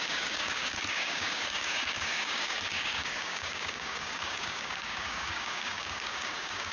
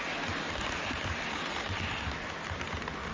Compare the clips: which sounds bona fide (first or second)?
second